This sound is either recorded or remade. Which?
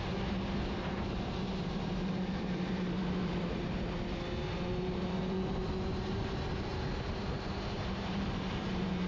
remade